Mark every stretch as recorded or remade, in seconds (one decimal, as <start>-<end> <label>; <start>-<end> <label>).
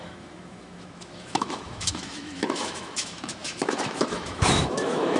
0.0-5.2 remade